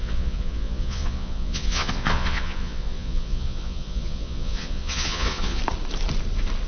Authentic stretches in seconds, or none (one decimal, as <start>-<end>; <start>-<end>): 5.6-6.7